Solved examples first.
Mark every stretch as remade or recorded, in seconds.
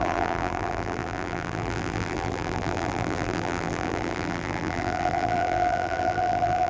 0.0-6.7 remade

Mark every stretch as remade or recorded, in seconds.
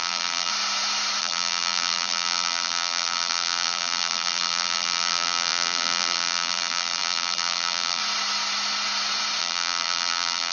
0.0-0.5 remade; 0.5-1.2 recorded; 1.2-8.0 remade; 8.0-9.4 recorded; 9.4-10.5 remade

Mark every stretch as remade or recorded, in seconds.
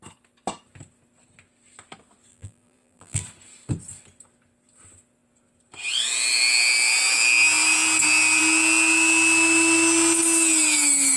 0.0-2.3 recorded; 2.3-3.2 remade; 3.2-11.2 recorded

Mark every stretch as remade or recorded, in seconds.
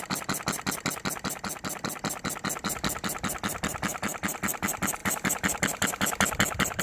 0.0-6.8 recorded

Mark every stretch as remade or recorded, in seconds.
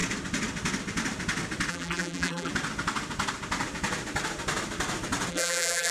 0.0-1.7 recorded; 1.7-2.5 remade; 2.5-5.3 recorded; 5.3-5.9 remade